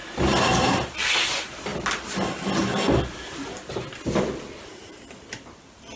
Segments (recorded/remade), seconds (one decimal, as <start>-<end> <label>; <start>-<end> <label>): 0.0-6.0 recorded